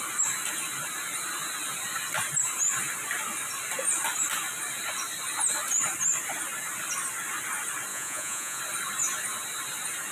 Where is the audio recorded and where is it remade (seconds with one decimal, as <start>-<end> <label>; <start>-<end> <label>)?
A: 0.0-7.9 recorded; 7.9-8.6 remade; 8.6-10.1 recorded